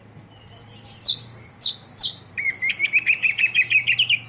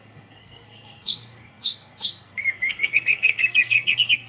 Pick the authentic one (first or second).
first